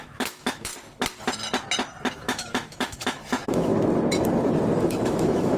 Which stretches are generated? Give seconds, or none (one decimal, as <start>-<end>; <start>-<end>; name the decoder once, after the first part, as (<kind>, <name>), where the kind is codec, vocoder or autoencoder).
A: 0.0-0.7 (autoencoder, DAC-VAE); 2.1-3.7; 4.8-5.6